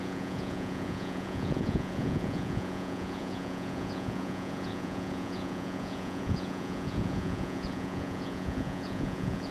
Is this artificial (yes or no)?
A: yes